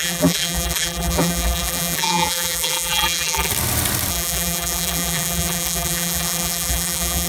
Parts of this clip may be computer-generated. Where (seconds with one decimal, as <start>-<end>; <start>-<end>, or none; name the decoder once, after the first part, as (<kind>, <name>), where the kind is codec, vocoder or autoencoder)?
0.0-3.5 (vocoder, BigVGAN v2); 4.1-7.3